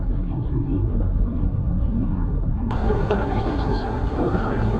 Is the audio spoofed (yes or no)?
yes